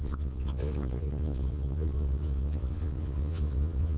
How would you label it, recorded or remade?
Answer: remade